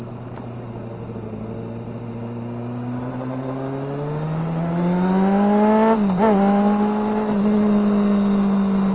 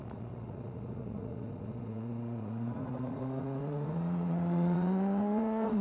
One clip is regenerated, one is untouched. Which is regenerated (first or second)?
second